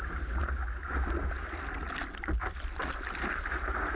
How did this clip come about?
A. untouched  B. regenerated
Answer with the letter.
A